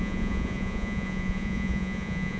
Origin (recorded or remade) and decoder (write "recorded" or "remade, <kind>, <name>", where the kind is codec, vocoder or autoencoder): remade, vocoder, Vocos